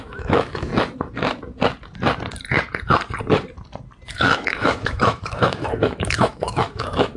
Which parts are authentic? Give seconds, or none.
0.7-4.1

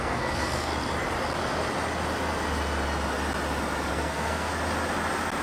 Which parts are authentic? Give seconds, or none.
0.7-3.9; 4.5-5.4

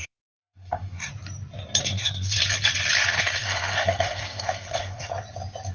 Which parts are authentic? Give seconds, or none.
1.1-1.8; 2.4-3.2; 5.1-5.7

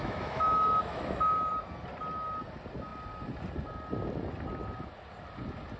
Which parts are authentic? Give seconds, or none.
1.5-5.8

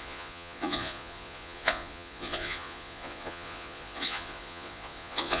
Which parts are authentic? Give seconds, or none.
none

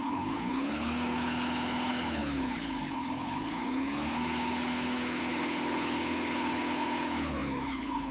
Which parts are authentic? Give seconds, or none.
none